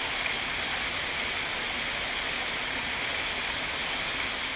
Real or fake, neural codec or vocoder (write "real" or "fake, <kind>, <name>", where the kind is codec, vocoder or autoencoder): real